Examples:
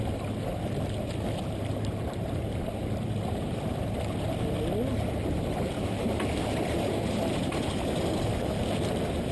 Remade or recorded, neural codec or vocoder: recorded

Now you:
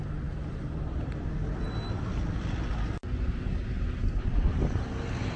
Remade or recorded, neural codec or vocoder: recorded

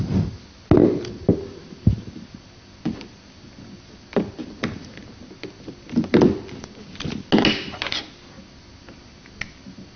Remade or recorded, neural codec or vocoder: recorded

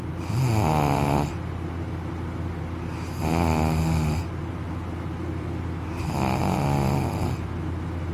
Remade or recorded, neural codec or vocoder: recorded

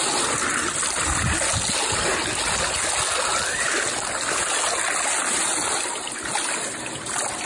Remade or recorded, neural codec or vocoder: recorded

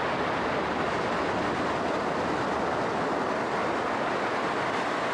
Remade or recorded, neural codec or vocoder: recorded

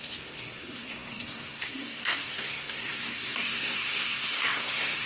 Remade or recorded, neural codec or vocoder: remade, codec, SNAC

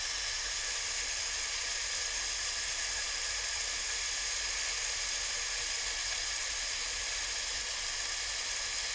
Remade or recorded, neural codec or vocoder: recorded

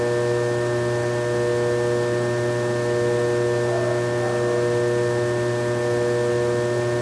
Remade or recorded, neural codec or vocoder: recorded